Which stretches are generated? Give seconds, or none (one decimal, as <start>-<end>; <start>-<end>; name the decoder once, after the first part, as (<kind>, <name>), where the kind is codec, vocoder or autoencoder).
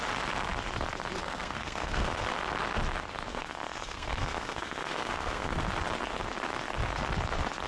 1.2-2.2 (codec, SNAC); 3.3-5.6